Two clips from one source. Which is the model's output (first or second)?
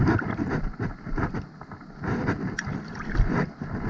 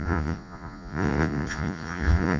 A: second